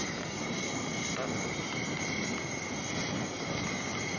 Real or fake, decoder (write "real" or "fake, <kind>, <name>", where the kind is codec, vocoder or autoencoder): real